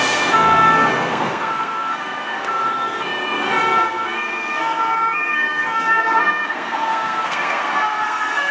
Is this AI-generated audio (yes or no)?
yes